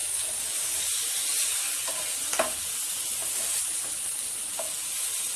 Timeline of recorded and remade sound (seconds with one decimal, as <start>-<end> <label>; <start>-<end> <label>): 0.0-5.4 recorded